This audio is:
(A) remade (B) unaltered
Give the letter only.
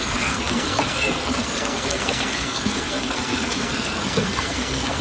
A